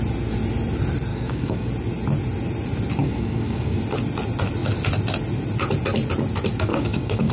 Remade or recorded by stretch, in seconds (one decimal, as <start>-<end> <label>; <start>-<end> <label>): 0.0-1.1 recorded; 1.1-1.7 remade; 1.7-3.0 recorded; 3.0-3.8 remade; 3.8-6.7 recorded; 6.7-7.3 remade